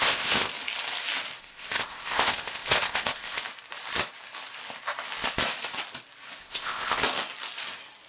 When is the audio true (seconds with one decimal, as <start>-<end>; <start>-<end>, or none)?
0.5-1.4; 3.4-6.4; 7.0-8.1